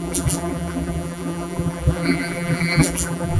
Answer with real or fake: fake